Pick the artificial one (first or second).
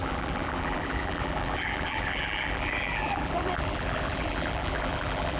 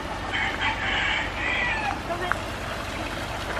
first